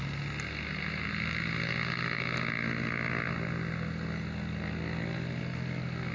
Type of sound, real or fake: real